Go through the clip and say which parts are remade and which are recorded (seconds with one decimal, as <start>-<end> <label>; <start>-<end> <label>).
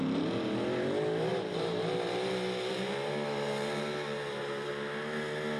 0.0-1.3 recorded; 1.3-4.7 remade; 4.7-5.6 recorded